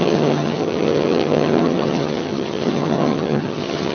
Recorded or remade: remade